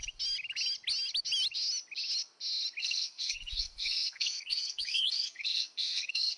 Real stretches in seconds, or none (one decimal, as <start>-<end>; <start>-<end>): 0.0-2.8